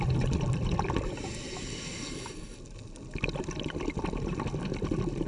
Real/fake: real